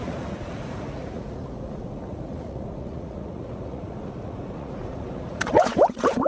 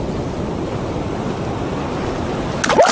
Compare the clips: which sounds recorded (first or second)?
second